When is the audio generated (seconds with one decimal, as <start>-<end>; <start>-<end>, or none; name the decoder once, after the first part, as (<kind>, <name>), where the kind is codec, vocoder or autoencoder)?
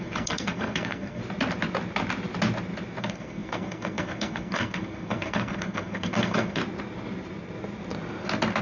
0.0-1.2 (codec, SNAC); 3.0-6.6